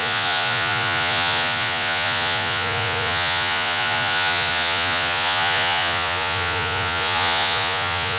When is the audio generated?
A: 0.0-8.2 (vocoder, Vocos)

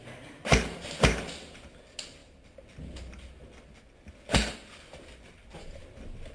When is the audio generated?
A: none

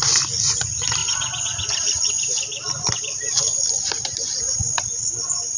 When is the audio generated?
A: none